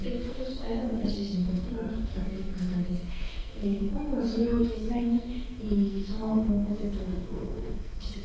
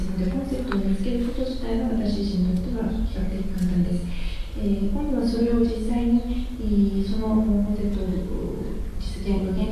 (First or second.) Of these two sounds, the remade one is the first